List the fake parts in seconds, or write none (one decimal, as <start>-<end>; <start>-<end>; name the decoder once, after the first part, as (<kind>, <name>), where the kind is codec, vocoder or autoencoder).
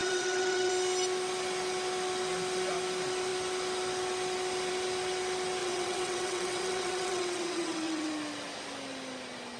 0.0-0.7 (vocoder, WaveNeXt); 5.6-8.1